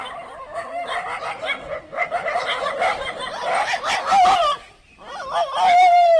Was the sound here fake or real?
fake